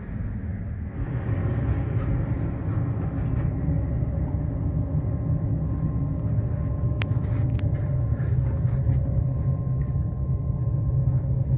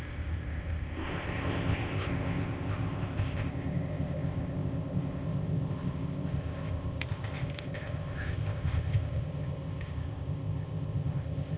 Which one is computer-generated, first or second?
second